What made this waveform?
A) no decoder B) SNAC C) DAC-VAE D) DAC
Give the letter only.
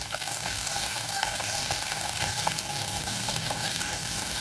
D